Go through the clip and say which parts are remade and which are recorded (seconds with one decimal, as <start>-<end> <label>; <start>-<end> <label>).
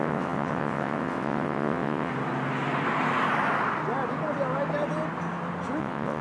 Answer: 0.0-2.1 remade; 2.1-5.8 recorded; 5.8-6.2 remade